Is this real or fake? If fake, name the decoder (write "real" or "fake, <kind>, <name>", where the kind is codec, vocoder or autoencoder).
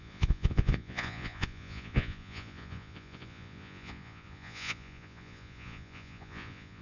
fake, vocoder, Vocos